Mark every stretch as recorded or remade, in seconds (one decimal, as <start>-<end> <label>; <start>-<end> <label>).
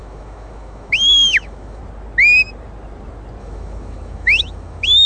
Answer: 0.0-1.8 remade; 1.8-3.4 recorded; 3.4-5.1 remade